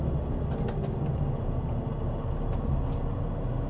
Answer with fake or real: real